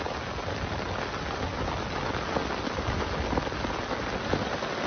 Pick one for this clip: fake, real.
real